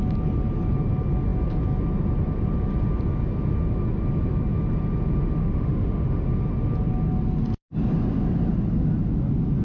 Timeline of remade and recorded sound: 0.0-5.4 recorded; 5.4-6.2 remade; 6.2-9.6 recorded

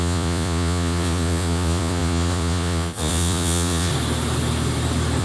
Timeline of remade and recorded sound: 0.0-3.9 remade; 3.9-5.2 recorded

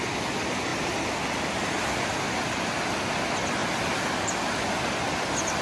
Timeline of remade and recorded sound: 0.0-5.6 recorded

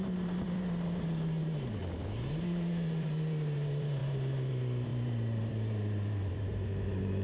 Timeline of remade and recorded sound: 0.0-1.8 remade; 1.8-2.3 recorded; 2.3-7.2 remade

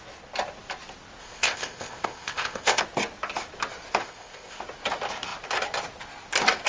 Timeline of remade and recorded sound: 0.0-1.2 recorded; 1.2-2.8 remade; 2.8-4.0 recorded; 4.0-4.6 remade; 4.6-6.7 recorded

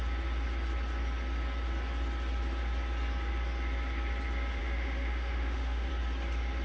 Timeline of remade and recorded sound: 0.0-4.6 recorded; 4.6-5.9 remade; 5.9-6.6 recorded

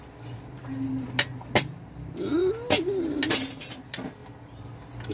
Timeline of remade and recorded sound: 0.0-5.1 recorded

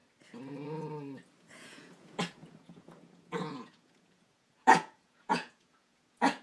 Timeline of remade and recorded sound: 0.0-1.4 recorded; 1.4-6.4 remade